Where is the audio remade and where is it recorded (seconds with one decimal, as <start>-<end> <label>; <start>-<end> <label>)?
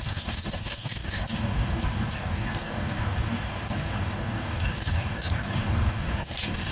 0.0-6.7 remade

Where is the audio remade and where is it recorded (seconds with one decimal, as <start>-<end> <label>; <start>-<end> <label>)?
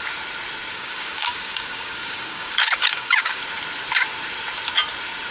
0.0-0.7 recorded; 0.7-3.4 remade; 3.4-5.3 recorded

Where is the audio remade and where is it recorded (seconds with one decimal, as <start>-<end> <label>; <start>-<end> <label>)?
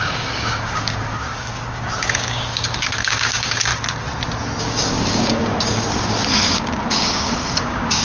0.0-3.7 remade; 3.7-4.6 recorded; 4.6-8.0 remade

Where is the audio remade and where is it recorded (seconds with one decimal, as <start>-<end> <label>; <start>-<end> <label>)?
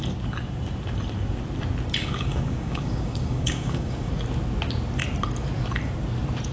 0.0-2.0 recorded; 2.0-4.1 remade; 4.1-6.5 recorded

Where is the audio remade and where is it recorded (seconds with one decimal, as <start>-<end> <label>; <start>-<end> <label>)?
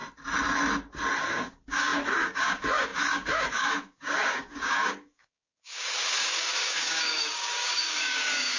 0.0-1.2 recorded; 1.2-8.6 remade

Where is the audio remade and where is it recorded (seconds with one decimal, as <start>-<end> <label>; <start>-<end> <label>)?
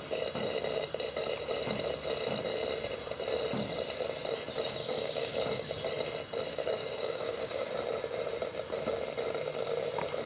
0.0-4.8 recorded; 4.8-5.7 remade; 5.7-6.5 recorded; 6.5-7.7 remade; 7.7-10.3 recorded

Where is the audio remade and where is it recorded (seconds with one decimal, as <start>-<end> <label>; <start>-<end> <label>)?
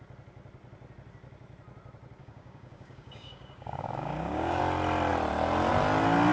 0.0-2.2 recorded; 2.2-4.6 remade; 4.6-6.3 recorded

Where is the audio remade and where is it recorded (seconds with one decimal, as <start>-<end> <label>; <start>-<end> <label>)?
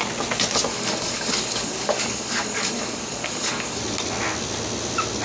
0.0-0.7 recorded; 0.7-3.8 remade; 3.8-5.2 recorded